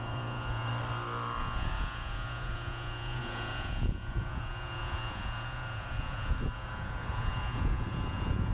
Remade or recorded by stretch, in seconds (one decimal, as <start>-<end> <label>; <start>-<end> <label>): 0.0-0.7 remade; 0.7-1.4 recorded; 1.4-8.5 remade